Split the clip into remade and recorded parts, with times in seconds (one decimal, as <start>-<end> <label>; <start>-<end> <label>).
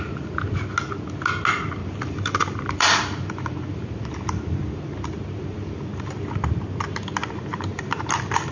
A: 0.0-1.8 recorded; 1.8-6.2 remade; 6.2-7.5 recorded; 7.5-8.5 remade